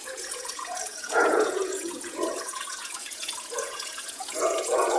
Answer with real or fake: fake